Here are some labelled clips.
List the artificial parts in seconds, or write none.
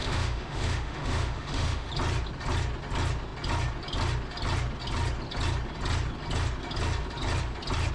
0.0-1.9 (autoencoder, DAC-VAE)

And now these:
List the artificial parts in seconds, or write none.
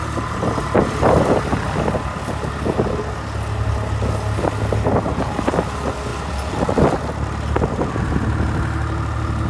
none